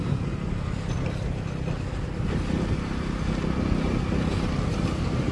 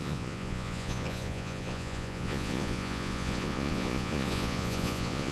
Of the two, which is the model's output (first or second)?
second